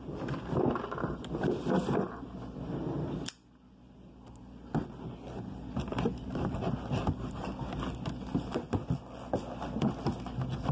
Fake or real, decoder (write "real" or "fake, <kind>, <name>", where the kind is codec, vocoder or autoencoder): real